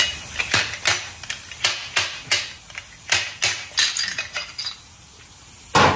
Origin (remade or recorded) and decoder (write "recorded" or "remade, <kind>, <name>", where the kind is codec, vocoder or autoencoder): recorded